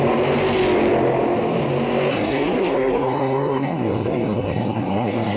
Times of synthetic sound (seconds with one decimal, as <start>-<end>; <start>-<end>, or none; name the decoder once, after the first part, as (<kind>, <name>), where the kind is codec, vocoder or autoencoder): 2.1-5.4 (codec, SNAC)

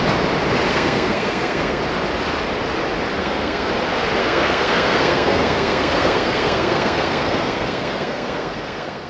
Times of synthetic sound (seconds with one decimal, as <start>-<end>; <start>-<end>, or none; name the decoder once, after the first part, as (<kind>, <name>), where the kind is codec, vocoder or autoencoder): 0.7-1.8 (codec, SNAC); 3.2-3.7; 4.2-9.1